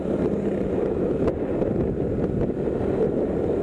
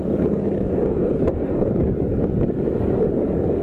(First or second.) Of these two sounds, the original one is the first